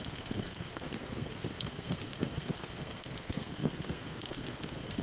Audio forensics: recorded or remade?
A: remade